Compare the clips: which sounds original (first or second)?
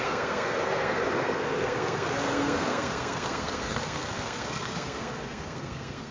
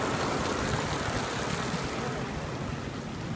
second